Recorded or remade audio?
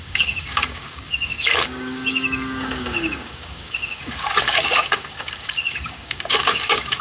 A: remade